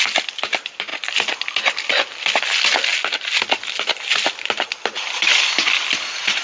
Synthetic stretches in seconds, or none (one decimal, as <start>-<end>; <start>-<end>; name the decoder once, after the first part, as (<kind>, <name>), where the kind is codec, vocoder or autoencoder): none